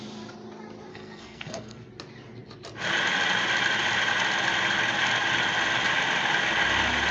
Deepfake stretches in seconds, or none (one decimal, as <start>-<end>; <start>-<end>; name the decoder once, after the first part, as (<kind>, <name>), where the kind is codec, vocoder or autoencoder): 0.9-1.9 (codec, SNAC)